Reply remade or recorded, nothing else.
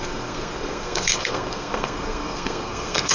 remade